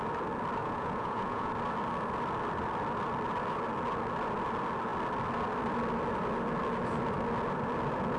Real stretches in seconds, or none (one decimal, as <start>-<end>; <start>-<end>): 0.0-0.6; 1.5-8.2